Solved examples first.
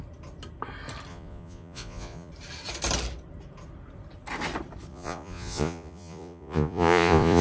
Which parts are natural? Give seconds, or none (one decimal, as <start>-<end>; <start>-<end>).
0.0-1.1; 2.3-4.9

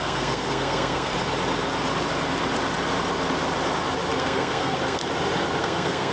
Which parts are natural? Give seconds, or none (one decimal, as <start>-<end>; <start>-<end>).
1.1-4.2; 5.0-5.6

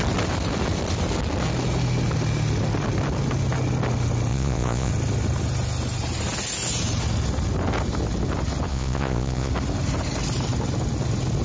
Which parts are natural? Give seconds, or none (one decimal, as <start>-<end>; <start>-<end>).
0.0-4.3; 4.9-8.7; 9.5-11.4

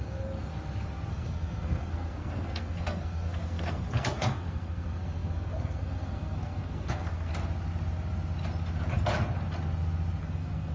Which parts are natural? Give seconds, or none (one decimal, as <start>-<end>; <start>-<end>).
0.5-1.1; 7.3-10.2

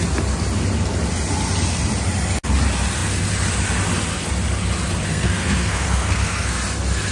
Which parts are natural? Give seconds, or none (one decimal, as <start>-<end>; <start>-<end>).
0.0-5.1; 6.5-7.1

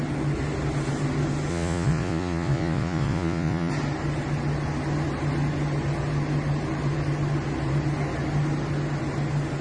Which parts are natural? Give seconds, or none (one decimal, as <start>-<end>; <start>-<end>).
0.0-1.5; 3.7-9.6